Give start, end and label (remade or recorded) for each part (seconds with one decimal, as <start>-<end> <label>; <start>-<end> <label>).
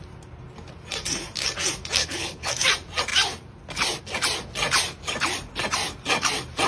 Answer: 0.0-2.0 recorded; 2.0-2.5 remade; 2.5-6.7 recorded